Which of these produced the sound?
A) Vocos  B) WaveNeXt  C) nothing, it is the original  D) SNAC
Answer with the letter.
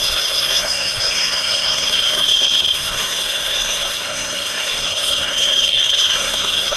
D